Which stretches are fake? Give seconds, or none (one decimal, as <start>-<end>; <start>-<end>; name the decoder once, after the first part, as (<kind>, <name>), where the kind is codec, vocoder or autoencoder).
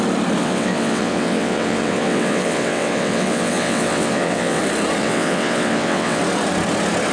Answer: 0.4-4.6 (vocoder, WaveNeXt); 5.0-6.2